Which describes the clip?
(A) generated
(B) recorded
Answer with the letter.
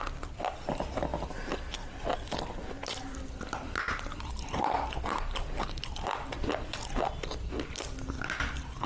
B